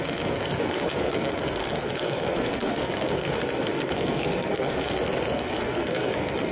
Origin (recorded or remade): remade